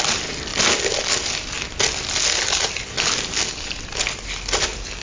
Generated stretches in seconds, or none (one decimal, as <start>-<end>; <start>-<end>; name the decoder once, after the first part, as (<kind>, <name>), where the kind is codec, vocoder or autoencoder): none